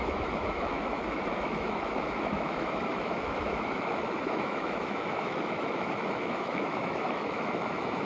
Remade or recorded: remade